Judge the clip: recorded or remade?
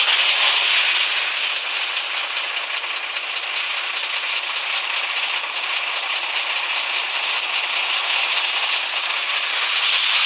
recorded